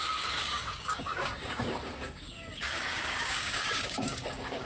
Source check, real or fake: fake